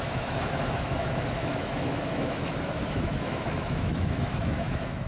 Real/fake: fake